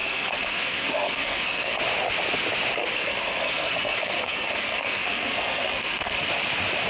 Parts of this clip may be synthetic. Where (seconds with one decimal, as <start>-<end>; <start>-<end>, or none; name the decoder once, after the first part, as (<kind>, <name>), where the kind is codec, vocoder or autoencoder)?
0.0-1.8 (codec, SNAC); 2.8-6.3